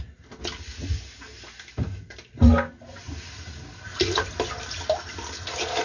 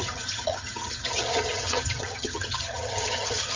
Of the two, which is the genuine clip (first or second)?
first